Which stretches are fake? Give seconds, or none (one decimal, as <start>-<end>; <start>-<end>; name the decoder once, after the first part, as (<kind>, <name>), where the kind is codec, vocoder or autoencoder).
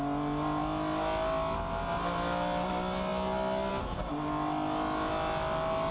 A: none